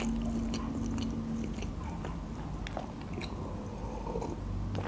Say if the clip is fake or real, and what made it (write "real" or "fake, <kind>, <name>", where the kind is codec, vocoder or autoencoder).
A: real